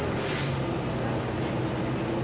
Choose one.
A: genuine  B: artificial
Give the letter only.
A